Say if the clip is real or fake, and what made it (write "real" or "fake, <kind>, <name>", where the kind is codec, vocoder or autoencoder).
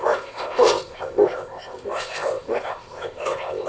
fake, codec, ZipCodec